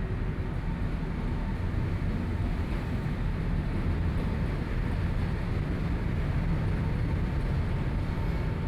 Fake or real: real